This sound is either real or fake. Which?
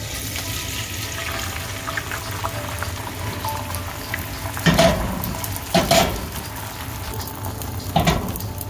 real